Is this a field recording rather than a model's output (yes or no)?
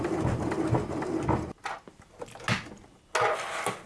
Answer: yes